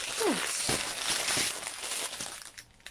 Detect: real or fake real